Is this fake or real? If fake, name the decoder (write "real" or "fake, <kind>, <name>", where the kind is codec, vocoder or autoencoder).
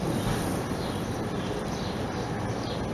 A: real